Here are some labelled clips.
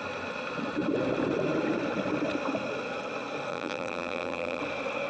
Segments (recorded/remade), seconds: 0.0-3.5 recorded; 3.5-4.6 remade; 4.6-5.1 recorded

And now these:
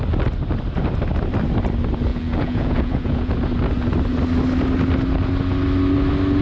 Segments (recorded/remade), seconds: 0.0-2.1 recorded; 2.1-3.3 remade; 3.3-6.4 recorded

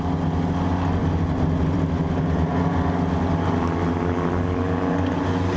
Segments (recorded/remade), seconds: 0.0-1.0 recorded; 1.0-2.7 remade; 2.7-5.6 recorded

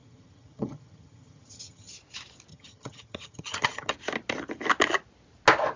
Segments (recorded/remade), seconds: 0.0-1.9 remade; 1.9-2.5 recorded; 2.5-3.9 remade; 3.9-5.8 recorded